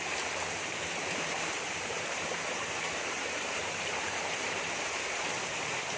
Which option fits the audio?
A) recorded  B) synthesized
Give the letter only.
B